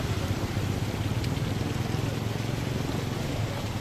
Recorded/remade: recorded